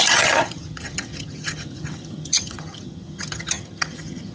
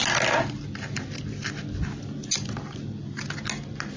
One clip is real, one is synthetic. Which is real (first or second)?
second